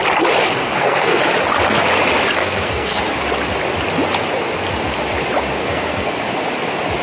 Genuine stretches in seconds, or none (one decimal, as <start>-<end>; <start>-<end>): 0.0-0.6; 1.2-2.4; 3.0-5.6; 6.1-7.0